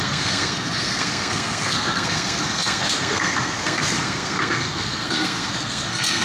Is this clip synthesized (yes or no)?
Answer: yes